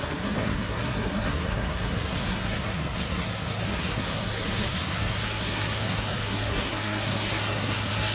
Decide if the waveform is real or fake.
fake